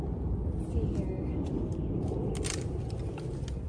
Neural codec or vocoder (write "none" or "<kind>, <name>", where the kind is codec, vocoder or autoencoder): none